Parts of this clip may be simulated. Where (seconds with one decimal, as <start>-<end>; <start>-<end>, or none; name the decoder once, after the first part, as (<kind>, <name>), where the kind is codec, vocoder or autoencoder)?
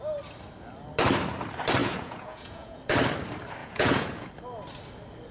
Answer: 1.8-2.8 (vocoder, Vocos); 3.6-4.3